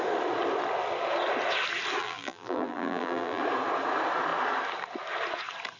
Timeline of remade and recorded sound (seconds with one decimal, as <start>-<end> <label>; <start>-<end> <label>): 0.0-2.0 recorded; 2.0-3.4 remade; 3.4-5.8 recorded